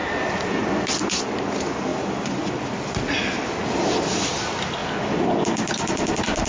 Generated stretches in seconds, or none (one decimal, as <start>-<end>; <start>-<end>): none

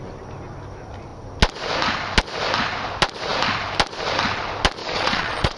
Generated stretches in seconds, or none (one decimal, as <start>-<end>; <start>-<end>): 4.8-5.6

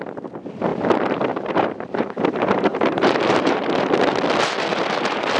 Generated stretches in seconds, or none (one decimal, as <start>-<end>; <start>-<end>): 0.7-3.9; 4.7-5.4